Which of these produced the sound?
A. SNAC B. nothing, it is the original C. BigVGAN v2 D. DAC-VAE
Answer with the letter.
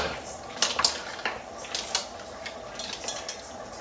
B